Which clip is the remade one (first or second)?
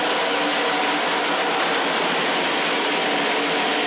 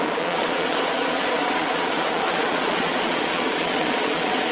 second